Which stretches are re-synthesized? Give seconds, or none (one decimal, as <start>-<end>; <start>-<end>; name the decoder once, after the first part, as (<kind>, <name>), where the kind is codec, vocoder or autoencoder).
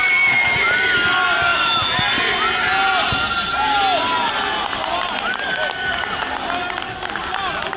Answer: none